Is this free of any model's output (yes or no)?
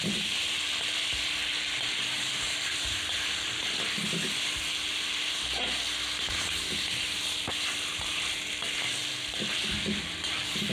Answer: no